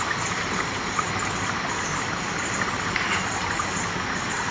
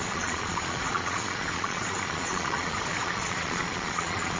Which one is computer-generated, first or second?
second